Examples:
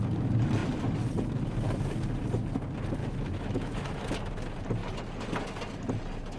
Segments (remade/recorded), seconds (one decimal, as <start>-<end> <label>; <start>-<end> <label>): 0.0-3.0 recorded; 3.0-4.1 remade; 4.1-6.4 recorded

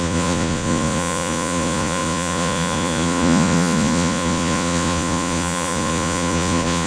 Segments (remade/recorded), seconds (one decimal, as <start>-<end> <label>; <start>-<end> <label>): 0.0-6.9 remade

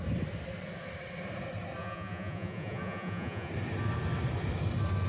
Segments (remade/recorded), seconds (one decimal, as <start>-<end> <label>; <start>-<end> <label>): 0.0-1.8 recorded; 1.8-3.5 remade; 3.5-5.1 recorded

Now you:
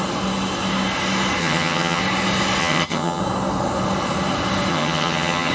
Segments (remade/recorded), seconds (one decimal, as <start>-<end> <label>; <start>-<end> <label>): 0.0-1.4 recorded; 1.4-2.0 remade; 2.0-2.6 recorded; 2.6-3.2 remade; 3.2-4.7 recorded; 4.7-5.5 remade

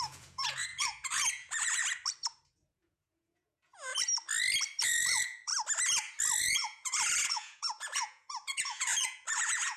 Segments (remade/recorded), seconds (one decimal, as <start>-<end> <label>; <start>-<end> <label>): 0.0-1.8 remade; 1.8-2.5 recorded; 2.5-3.9 remade; 3.9-4.9 recorded; 4.9-5.5 remade; 5.5-6.4 recorded; 6.4-9.8 remade

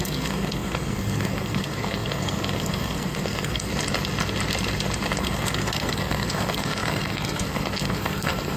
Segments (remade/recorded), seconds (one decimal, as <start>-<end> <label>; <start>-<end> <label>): 0.0-3.7 remade; 3.7-5.2 recorded; 5.2-8.6 remade

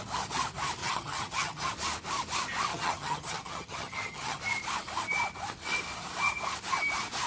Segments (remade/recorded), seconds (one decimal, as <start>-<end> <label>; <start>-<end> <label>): 0.0-0.8 recorded; 0.8-1.7 remade; 1.7-2.7 recorded; 2.7-4.4 remade; 4.4-7.3 recorded

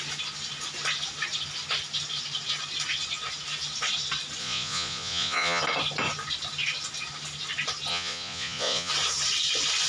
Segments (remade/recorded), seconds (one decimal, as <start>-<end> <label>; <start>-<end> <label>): 0.0-4.4 recorded; 4.4-5.6 remade; 5.6-7.9 recorded; 7.9-8.9 remade; 8.9-9.9 recorded